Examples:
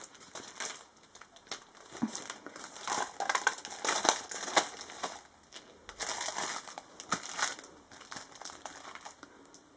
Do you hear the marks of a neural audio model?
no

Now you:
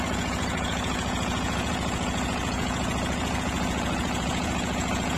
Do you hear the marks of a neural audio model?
yes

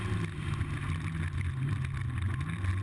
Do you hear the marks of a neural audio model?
no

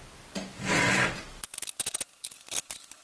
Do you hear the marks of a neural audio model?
no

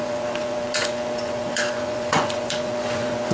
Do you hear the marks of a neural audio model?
yes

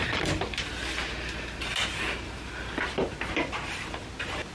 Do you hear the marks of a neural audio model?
no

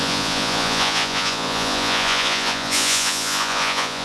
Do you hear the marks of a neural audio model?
yes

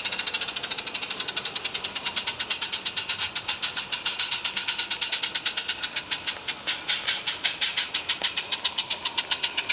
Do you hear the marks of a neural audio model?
no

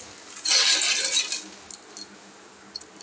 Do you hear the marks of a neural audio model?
no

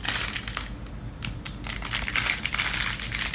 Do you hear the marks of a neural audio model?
no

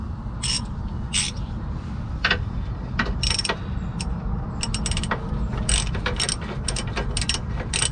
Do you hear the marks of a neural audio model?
no